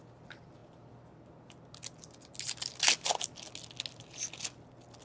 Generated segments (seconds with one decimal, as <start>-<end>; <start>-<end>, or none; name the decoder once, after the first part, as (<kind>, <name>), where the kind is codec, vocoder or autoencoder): none